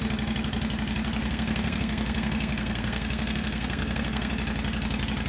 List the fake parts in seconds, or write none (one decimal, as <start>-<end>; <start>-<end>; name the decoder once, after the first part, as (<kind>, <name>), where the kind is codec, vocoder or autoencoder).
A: 1.2-4.3 (codec, SNAC)